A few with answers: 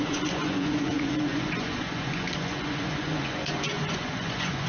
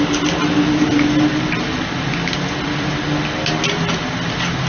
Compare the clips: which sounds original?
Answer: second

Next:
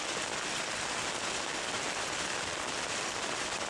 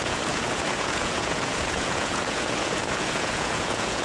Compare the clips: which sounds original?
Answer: first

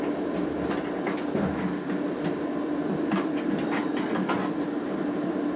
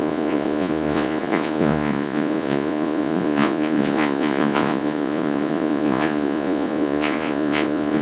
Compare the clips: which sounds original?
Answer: first